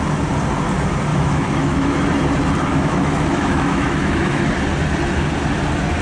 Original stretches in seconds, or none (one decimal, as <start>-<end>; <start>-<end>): 0.0-1.1; 2.1-2.7; 4.5-6.0

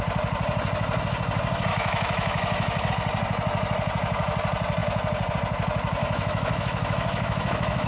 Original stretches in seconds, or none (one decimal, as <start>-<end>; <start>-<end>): 0.0-1.7; 2.9-6.0

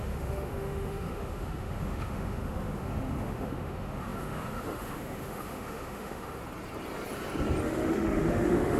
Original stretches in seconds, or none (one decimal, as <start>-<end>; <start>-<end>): 6.4-7.6

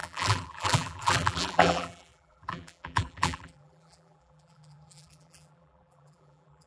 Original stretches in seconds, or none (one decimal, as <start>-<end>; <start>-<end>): none

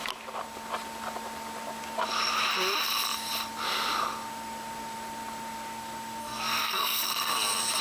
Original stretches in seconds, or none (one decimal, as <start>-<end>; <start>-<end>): 0.0-6.2; 7.1-7.8

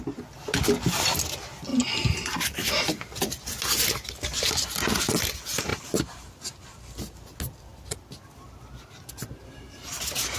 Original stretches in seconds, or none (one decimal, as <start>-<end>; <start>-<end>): 0.0-5.7; 6.6-10.4

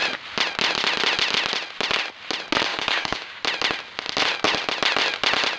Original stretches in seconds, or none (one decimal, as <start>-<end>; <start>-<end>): 0.0-2.7; 3.4-5.6